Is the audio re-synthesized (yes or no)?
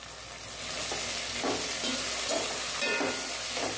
no